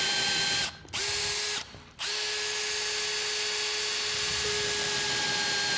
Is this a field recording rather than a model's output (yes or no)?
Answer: yes